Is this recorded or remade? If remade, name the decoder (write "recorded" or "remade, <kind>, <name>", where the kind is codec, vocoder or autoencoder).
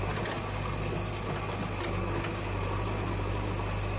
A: recorded